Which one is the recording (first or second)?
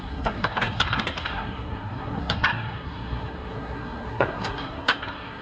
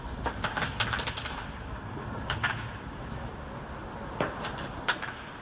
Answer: second